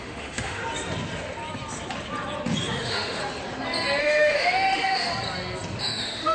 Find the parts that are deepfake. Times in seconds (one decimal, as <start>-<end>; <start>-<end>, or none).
0.0-0.6; 2.7-3.2; 4.0-5.1; 5.8-6.3